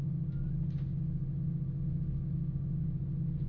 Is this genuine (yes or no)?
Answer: yes